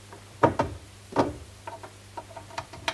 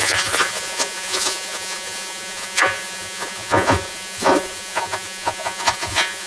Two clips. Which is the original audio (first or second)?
first